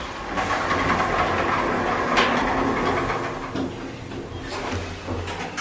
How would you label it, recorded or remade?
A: recorded